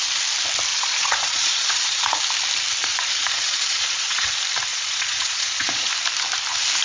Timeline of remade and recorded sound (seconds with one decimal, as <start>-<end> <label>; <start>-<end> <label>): 0.0-0.7 recorded; 0.7-2.2 remade; 2.2-2.8 recorded; 2.8-4.3 remade; 4.3-4.7 recorded; 4.7-5.9 remade; 5.9-6.8 recorded